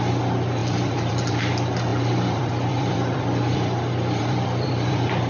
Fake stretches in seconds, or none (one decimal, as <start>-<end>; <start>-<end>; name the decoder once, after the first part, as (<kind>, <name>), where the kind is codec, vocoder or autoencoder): 0.6-1.4 (vocoder, BigVGAN v2); 1.9-5.3

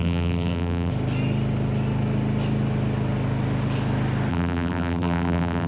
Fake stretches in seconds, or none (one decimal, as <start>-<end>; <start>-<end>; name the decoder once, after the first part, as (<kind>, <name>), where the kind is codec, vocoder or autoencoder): 0.0-0.9 (vocoder, BigVGAN v2); 4.3-5.7

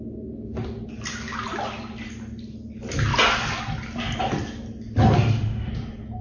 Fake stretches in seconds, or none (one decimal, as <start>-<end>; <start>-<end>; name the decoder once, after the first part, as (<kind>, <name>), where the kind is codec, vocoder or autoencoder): 5.2-5.7 (autoencoder, DAC-VAE)

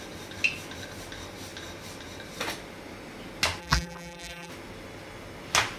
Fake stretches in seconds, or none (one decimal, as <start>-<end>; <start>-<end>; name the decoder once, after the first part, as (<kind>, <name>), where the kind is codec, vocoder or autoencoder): 3.6-4.5 (vocoder, BigVGAN v2)

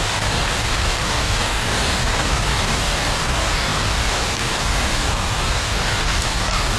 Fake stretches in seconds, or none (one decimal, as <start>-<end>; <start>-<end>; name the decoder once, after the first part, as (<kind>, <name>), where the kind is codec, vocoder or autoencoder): 0.0-6.8 (codec, DAC)

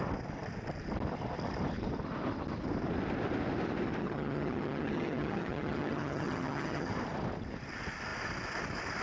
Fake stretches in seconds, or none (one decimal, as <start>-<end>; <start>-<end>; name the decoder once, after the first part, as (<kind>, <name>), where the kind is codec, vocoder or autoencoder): 4.0-6.9 (vocoder, HiFi-GAN)

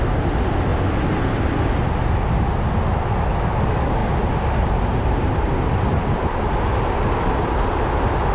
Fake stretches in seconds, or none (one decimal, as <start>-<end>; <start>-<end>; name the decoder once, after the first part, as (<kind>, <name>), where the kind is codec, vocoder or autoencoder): 4.0-6.5 (vocoder, BigVGAN v2)

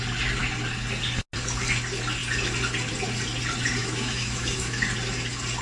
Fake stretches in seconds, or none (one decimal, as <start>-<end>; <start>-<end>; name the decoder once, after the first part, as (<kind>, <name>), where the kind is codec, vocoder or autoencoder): 3.8-4.8 (autoencoder, DAC-VAE)